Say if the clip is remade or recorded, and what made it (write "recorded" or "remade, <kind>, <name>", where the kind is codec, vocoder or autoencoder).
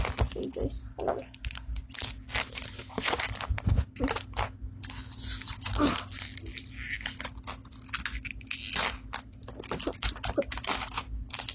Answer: recorded